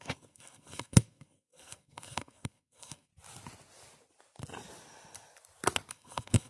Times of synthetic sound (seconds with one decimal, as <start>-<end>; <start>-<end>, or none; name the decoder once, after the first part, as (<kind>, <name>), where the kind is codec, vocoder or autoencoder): 0.0-3.1 (codec, SNAC); 5.9-6.5